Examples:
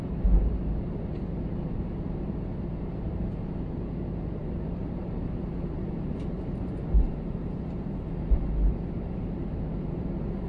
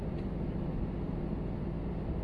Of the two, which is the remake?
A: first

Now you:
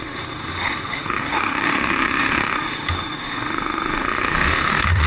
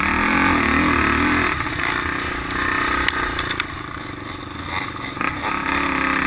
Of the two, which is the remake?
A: first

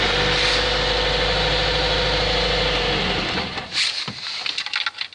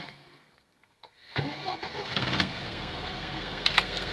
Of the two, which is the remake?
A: second